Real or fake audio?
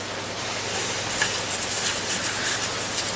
real